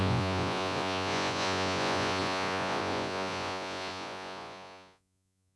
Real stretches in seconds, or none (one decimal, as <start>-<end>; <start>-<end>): none